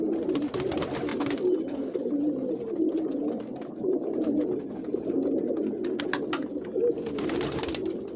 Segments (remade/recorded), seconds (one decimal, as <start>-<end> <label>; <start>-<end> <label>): 0.0-8.2 recorded